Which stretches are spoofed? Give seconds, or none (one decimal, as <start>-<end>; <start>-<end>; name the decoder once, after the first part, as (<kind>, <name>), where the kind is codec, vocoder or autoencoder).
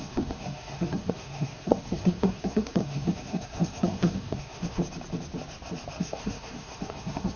0.0-4.8 (codec, SNAC); 6.0-7.4